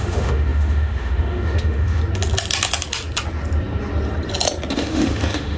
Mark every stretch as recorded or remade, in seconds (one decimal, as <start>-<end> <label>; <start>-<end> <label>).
0.0-2.0 remade; 2.0-4.7 recorded; 4.7-5.6 remade